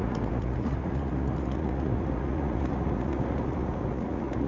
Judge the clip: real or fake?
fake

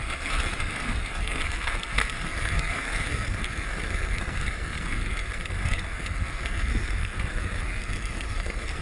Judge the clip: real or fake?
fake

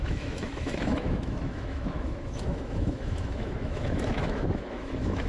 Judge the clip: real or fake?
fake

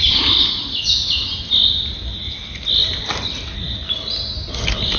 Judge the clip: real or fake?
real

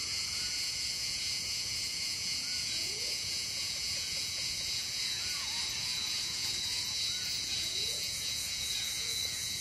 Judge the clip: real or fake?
fake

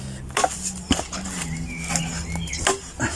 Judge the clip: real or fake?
real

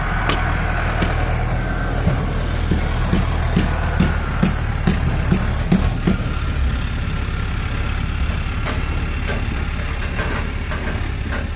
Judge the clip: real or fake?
real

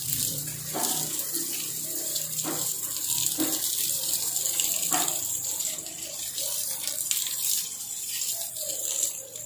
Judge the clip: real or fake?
fake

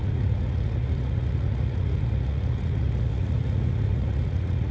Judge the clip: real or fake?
fake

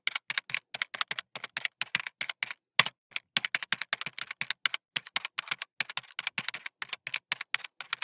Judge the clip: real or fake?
real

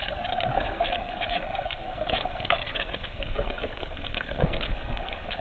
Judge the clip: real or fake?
fake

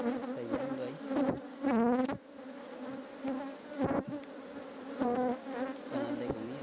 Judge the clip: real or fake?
real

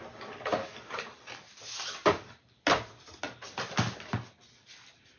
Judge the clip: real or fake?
real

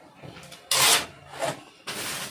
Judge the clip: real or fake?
real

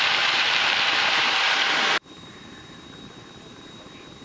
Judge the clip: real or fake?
fake